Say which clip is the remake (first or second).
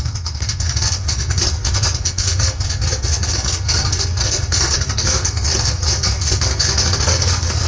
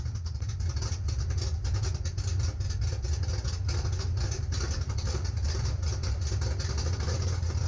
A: first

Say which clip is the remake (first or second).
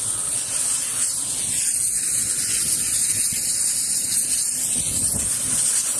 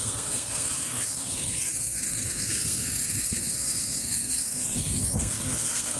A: second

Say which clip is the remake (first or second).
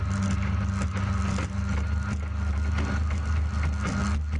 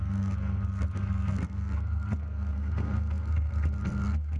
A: second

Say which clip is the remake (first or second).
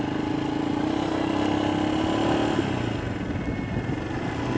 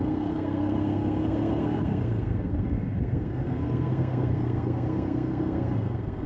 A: second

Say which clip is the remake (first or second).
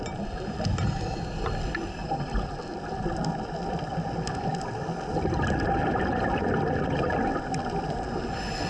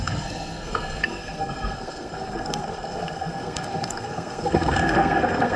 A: second